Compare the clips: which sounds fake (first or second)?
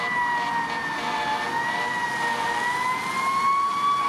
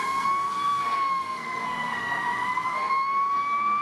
second